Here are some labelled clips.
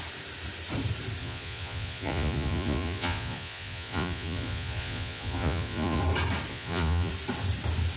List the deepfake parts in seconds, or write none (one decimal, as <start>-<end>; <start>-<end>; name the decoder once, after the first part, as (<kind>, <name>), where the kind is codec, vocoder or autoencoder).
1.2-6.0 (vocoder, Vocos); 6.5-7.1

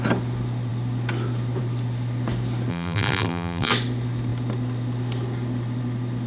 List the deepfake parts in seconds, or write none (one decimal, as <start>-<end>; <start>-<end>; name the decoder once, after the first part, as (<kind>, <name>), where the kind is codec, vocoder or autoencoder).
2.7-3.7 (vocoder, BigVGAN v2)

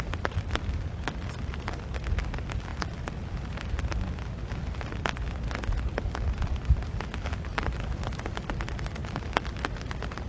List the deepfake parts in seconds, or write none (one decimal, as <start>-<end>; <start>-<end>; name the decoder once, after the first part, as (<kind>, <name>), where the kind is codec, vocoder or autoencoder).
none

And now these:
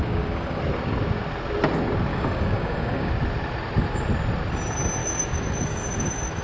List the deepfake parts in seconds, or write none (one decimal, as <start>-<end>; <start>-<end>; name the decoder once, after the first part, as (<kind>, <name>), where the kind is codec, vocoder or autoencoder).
0.0-0.6 (codec, DAC); 2.1-3.1; 5.0-6.4

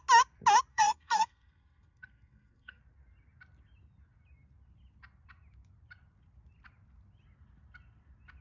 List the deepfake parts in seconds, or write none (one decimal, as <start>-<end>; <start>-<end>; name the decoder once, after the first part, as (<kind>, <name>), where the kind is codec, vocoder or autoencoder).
0.7-2.8 (codec, SNAC)

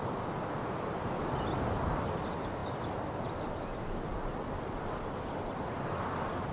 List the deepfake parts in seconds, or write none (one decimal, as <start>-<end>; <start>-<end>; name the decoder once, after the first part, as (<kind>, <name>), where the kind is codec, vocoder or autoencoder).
none